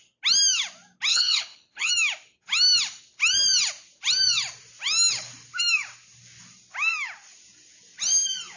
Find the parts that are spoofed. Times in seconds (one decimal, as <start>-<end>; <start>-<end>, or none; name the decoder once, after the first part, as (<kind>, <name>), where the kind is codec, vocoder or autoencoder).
1.1-1.9 (codec, HILCodec)